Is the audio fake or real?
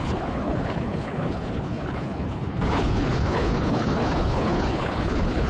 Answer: fake